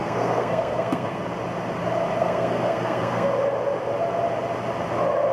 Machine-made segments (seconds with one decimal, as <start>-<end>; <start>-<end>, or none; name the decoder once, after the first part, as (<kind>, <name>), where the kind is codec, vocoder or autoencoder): 0.0-1.2 (codec, SNAC); 2.2-3.3